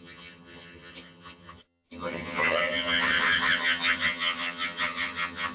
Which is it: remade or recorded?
remade